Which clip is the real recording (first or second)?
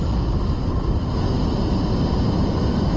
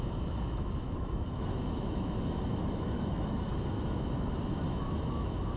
first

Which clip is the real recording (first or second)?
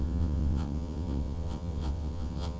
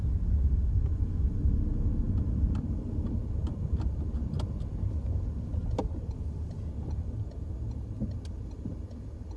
second